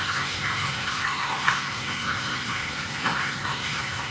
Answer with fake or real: fake